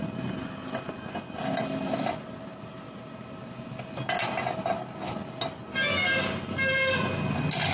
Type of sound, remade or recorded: recorded